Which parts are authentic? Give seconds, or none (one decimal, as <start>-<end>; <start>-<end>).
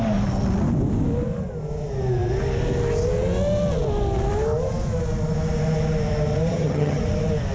0.0-6.5; 7.0-7.5